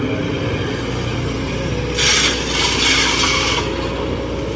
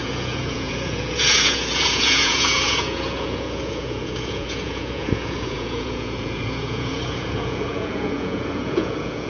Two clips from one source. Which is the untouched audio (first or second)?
first